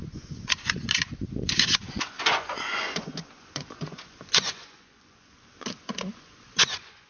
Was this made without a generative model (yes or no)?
no